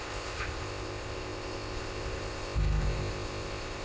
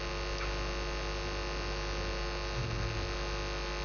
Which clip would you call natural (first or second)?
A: second